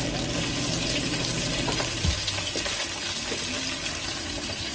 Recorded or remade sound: recorded